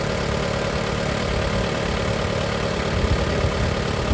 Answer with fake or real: real